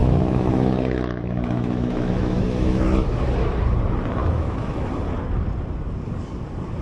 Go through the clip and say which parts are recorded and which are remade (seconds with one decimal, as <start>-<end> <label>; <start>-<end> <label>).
0.0-3.2 remade; 3.2-4.2 recorded; 4.2-4.9 remade; 4.9-6.8 recorded